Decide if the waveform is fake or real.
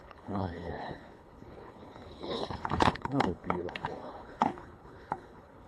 fake